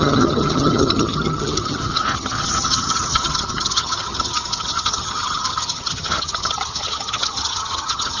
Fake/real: fake